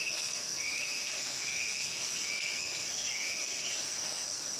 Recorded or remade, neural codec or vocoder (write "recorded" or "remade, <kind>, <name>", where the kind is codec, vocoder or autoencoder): remade, codec, SNAC